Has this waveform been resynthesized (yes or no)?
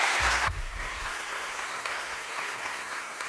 yes